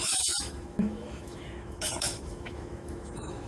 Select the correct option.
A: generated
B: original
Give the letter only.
A